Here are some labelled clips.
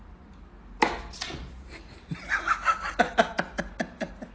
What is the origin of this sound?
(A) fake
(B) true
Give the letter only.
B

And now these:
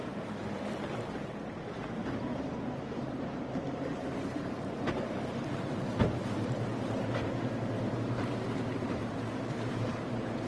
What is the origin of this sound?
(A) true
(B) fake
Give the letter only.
B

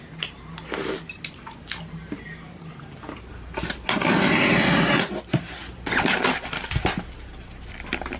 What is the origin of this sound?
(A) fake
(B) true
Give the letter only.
B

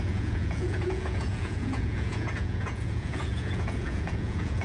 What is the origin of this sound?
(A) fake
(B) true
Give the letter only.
A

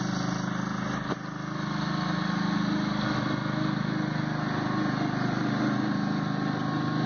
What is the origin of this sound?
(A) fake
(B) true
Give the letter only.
B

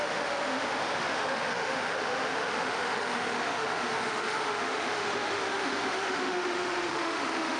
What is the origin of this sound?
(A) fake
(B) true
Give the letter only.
A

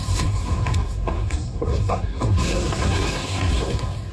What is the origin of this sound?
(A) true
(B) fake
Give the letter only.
B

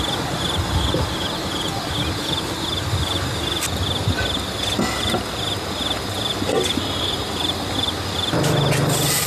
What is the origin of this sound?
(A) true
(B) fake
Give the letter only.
A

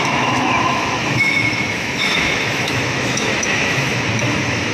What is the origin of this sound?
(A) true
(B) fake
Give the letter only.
B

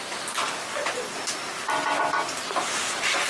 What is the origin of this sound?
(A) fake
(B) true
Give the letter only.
B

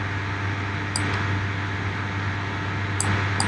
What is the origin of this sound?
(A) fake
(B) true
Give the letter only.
B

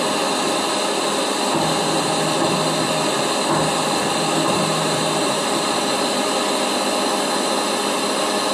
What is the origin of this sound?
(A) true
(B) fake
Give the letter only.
A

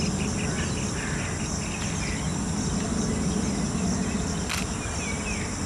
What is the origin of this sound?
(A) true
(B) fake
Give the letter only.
A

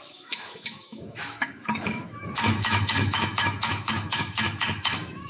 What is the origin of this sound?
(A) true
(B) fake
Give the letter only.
B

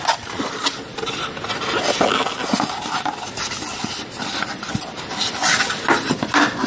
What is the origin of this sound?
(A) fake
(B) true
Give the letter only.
B